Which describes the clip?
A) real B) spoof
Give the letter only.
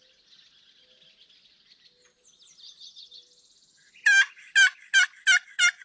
A